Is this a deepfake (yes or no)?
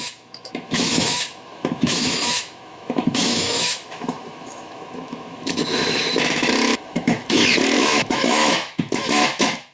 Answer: yes